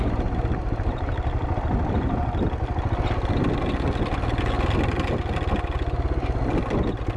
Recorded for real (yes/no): yes